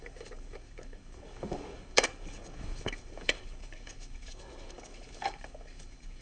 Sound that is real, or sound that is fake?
fake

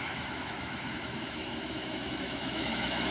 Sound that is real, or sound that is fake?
fake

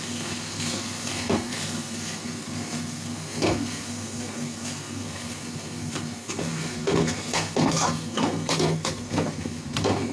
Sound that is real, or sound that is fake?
fake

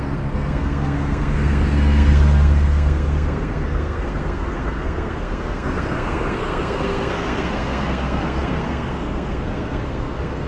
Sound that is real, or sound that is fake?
fake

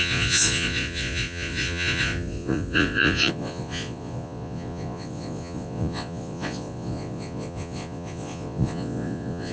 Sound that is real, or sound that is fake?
fake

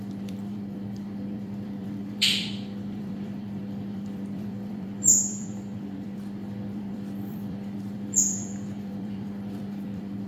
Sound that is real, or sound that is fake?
fake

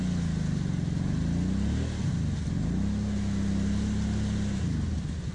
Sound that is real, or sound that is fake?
real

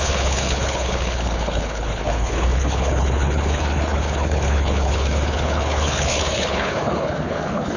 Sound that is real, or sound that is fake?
fake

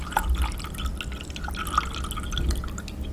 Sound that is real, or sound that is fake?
real